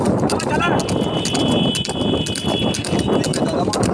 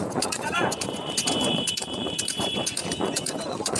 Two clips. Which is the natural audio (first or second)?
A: first